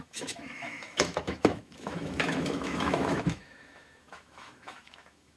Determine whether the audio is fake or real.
fake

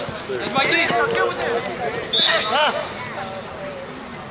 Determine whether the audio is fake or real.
real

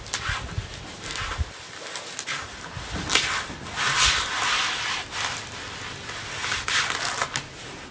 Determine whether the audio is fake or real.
real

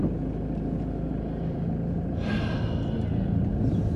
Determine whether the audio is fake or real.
real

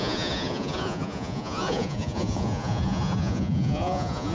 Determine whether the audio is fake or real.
fake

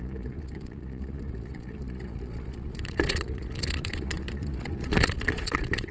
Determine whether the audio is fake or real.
fake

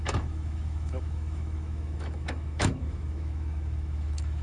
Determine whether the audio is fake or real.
fake